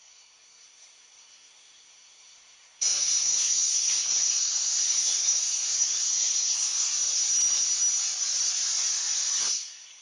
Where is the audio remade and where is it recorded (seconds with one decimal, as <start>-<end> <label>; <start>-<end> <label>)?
0.0-6.9 remade; 6.9-9.4 recorded; 9.4-10.0 remade